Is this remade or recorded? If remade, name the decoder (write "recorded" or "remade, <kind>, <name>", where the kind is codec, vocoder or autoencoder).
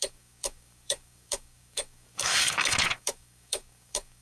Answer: remade, codec, DAC